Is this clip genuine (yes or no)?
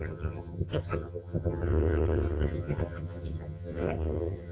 no